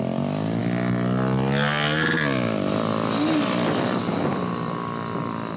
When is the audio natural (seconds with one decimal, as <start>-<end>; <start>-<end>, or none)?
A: 0.0-5.6